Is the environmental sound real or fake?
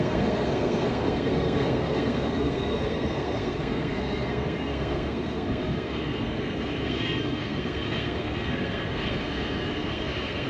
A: fake